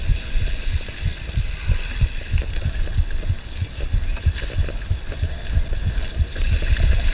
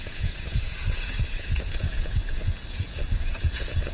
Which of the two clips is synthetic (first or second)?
second